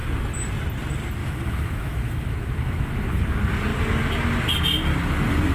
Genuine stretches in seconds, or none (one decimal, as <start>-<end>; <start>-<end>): 0.0-1.2; 3.2-5.5